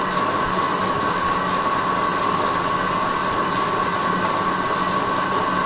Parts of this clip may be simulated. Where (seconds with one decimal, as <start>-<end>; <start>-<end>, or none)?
0.8-1.4